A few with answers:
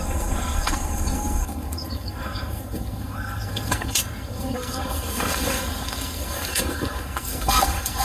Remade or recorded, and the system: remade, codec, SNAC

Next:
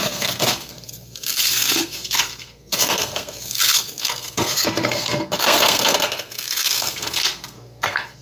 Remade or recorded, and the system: remade, codec, SNAC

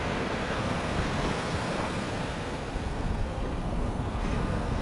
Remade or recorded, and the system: remade, codec, SNAC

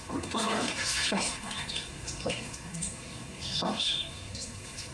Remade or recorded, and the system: remade, codec, SNAC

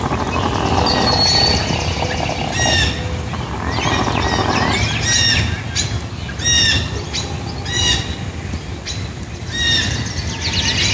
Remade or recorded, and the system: recorded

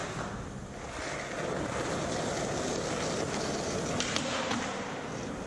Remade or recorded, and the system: recorded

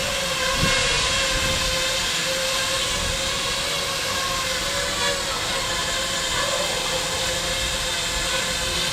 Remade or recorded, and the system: recorded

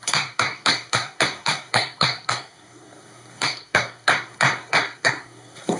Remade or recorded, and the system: remade, codec, SNAC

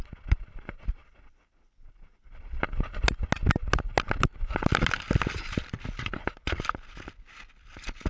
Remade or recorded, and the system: recorded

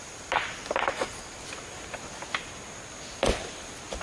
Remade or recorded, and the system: recorded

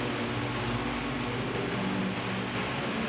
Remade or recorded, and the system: recorded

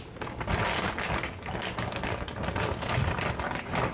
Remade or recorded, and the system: recorded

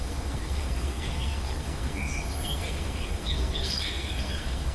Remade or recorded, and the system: remade, codec, SNAC